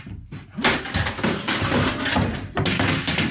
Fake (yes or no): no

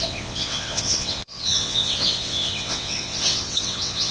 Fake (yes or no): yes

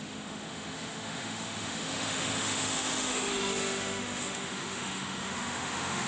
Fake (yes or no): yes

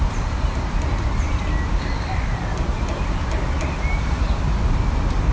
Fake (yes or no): no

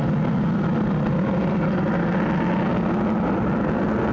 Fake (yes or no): no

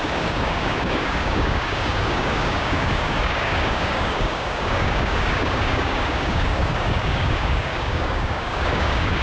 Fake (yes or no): yes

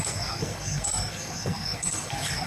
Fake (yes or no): yes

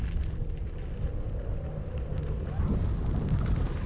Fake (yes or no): no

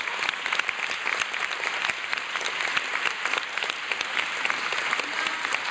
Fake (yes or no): no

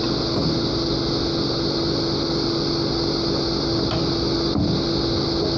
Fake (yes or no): no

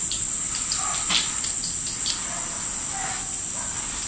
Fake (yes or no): no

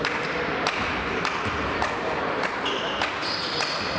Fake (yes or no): no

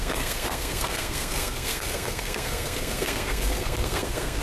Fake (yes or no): yes